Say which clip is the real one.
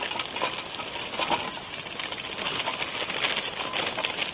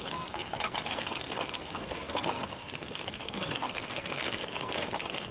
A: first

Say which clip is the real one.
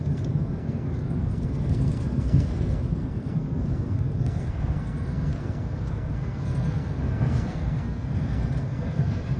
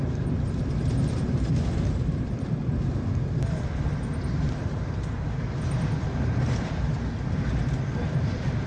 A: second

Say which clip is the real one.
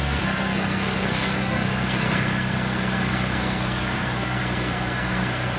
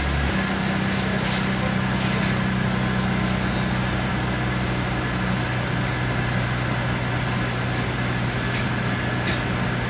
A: second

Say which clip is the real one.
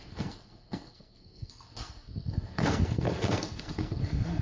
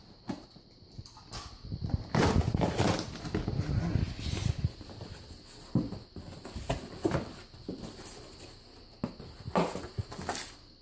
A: second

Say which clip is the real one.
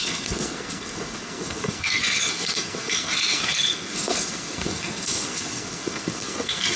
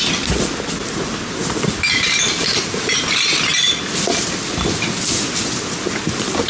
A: second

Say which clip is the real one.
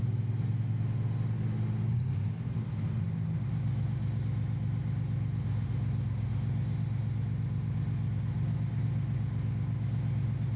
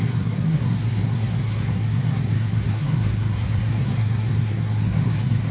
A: first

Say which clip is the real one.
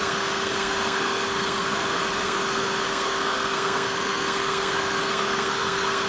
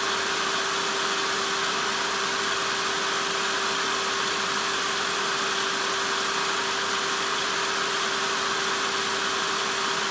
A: second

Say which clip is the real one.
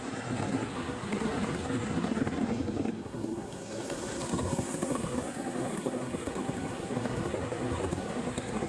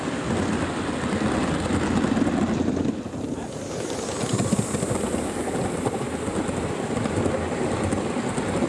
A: second